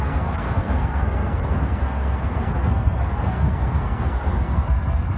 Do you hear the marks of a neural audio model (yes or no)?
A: yes